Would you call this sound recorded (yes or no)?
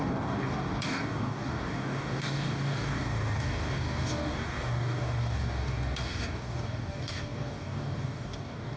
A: no